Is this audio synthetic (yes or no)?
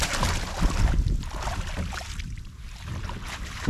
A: no